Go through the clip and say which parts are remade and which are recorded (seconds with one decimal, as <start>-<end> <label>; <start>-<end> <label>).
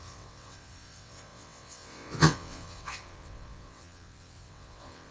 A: 0.0-5.1 remade